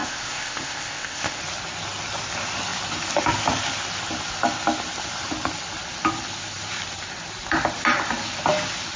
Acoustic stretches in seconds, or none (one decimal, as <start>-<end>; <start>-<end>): 1.4-9.0